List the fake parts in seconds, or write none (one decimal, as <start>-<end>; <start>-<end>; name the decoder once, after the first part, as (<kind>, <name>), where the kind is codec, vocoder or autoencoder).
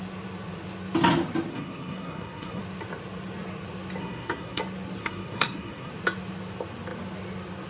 1.5-2.6 (codec, SNAC); 4.0-4.6; 5.0-5.9